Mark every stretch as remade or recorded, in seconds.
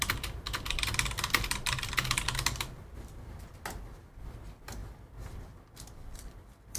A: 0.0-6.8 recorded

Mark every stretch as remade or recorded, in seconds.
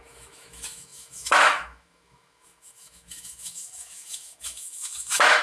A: 0.0-5.4 remade